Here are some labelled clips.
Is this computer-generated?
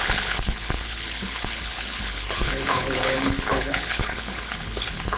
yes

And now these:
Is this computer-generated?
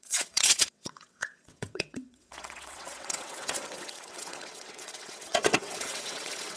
yes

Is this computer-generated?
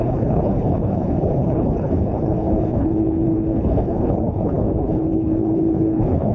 yes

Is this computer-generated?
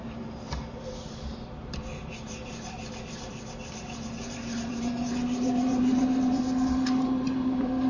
yes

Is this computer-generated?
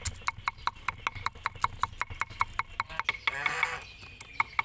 no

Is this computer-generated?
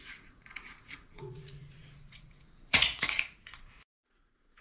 yes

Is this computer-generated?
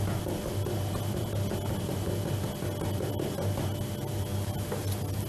no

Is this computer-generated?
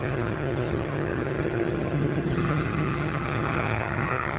yes